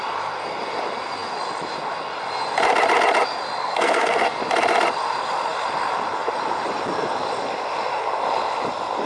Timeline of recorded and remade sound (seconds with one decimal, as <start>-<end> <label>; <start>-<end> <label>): 0.0-3.6 recorded; 3.6-4.4 remade; 4.4-9.1 recorded